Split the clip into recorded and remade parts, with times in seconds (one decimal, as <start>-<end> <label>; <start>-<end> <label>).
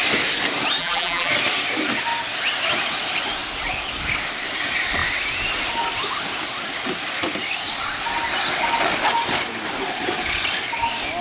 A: 0.0-0.8 recorded; 0.8-1.3 remade; 1.3-11.2 recorded